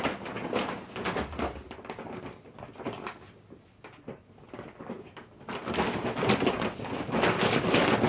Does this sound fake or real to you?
real